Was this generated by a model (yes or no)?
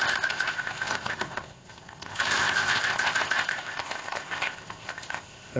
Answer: yes